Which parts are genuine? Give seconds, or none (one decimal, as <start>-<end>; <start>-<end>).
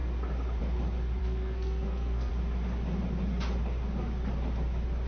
0.0-1.2; 2.3-5.1